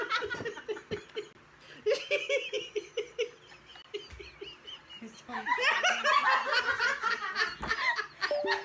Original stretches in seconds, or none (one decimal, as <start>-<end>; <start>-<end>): 0.0-8.6